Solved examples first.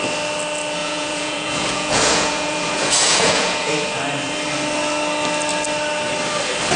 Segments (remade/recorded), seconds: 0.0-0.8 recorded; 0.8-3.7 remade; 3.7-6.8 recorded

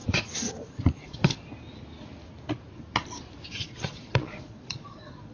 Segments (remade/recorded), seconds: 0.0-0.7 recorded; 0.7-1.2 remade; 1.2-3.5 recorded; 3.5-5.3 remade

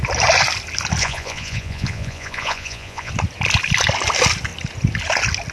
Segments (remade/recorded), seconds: 0.0-1.0 recorded; 1.0-3.1 remade; 3.1-5.5 recorded

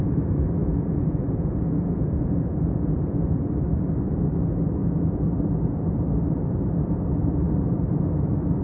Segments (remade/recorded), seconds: 0.0-0.6 recorded; 0.6-3.5 remade; 3.5-4.8 recorded; 4.8-5.3 remade; 5.3-8.6 recorded

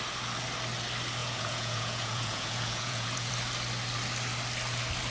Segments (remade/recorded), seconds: 0.0-1.2 recorded; 1.2-3.3 remade; 3.3-5.1 recorded

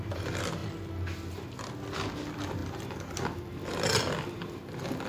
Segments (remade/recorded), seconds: 0.0-5.1 recorded

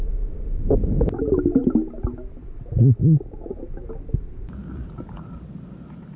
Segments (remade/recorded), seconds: 0.0-6.2 recorded